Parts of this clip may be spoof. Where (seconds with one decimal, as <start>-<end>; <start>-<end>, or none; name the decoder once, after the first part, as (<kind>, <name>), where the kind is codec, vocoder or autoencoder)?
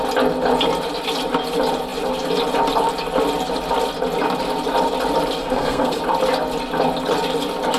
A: 5.4-6.0 (codec, SNAC)